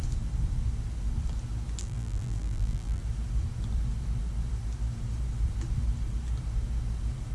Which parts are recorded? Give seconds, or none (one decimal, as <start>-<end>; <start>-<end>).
0.0-1.8; 3.0-7.3